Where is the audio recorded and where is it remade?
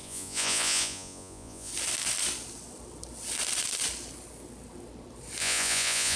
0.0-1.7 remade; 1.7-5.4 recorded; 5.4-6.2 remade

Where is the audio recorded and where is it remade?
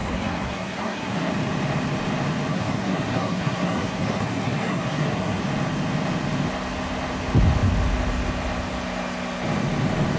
0.0-1.3 remade; 1.3-2.5 recorded; 2.5-5.4 remade; 5.4-10.2 recorded